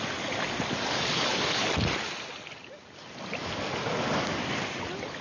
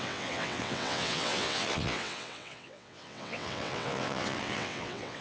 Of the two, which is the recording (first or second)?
first